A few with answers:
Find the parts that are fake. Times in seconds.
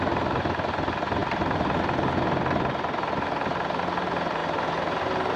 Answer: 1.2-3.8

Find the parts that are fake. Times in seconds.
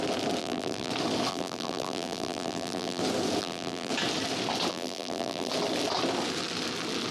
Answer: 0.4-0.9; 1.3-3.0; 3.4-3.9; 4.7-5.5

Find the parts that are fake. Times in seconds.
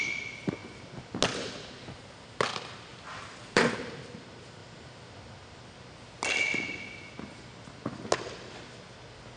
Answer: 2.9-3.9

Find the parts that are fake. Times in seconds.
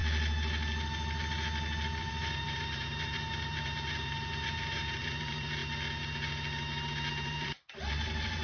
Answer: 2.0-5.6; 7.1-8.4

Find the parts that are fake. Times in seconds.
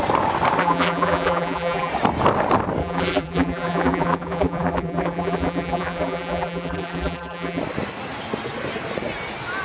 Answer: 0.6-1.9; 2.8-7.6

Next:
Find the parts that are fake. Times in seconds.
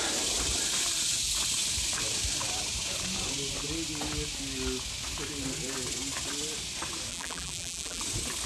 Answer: 7.1-8.0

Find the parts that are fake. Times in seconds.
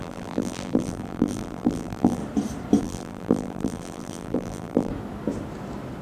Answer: 0.0-2.2; 2.8-4.9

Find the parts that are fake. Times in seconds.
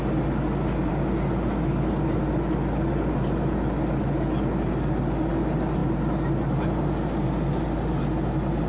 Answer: none